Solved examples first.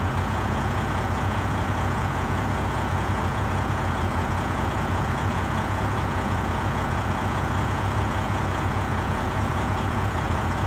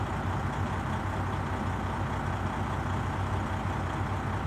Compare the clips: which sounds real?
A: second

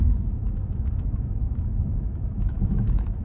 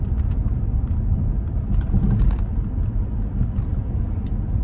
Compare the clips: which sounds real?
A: second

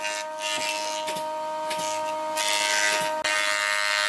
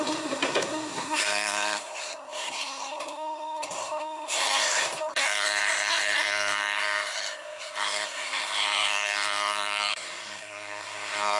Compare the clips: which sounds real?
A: first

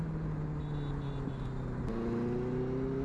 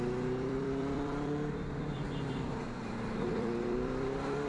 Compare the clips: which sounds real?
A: first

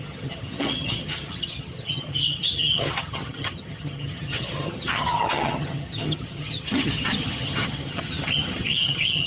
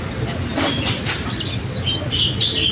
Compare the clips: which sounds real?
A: second